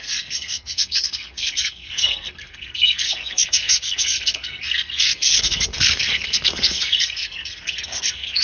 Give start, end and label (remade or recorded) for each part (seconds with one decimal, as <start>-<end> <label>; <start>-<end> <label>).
0.0-8.4 remade